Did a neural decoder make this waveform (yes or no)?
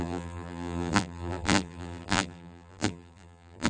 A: yes